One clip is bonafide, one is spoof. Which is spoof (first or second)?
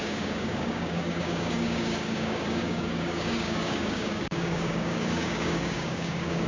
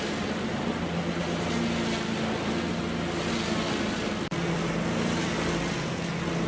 first